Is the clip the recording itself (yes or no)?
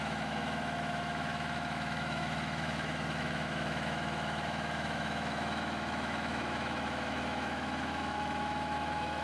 no